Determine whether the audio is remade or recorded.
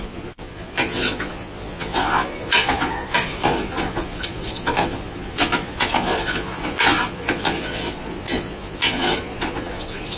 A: remade